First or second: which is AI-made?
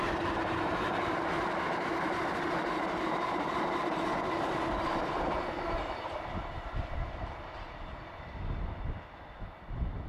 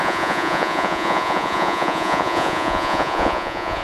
second